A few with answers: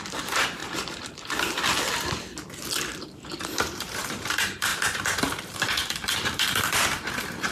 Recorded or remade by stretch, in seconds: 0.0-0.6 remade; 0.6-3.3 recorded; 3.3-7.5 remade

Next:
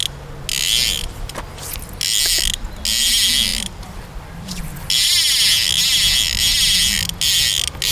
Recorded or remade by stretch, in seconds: 0.0-3.5 recorded; 3.5-4.6 remade; 4.6-7.9 recorded

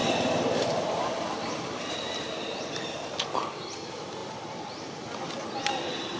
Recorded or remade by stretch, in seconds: 0.0-4.2 recorded; 4.2-5.1 remade; 5.1-6.2 recorded

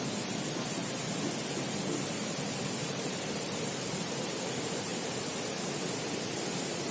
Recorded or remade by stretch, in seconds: 0.0-2.8 recorded; 2.8-4.1 remade; 4.1-4.9 recorded; 4.9-5.5 remade; 5.5-6.9 recorded

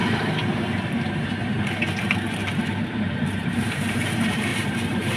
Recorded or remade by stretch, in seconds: 0.0-1.3 remade; 1.3-2.6 recorded; 2.6-5.2 remade

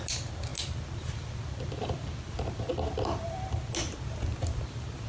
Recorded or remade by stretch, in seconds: 0.0-2.7 recorded; 2.7-3.6 remade; 3.6-5.1 recorded

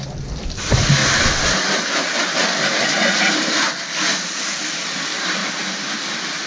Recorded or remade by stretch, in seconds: 0.0-1.0 recorded; 1.0-4.9 remade; 4.9-5.4 recorded; 5.4-6.5 remade